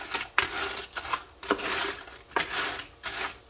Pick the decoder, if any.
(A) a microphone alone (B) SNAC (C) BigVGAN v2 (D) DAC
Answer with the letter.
A